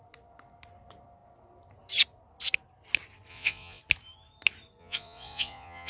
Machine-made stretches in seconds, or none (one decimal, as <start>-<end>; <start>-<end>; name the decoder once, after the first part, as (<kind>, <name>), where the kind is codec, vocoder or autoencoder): 3.3-3.8 (vocoder, Vocos); 4.8-5.9

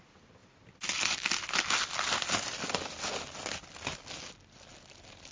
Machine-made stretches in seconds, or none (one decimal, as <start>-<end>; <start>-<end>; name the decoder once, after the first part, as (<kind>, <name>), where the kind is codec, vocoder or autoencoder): none